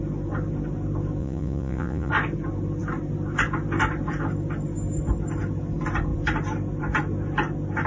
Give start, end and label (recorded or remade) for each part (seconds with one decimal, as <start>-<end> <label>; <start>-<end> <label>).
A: 0.0-1.2 recorded; 1.2-2.1 remade; 2.1-7.9 recorded